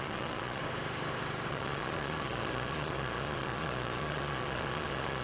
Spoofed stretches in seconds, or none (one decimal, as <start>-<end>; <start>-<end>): 0.0-0.6; 1.5-5.2